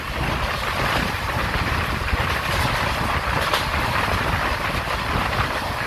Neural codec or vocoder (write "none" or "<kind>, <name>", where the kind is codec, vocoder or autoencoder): none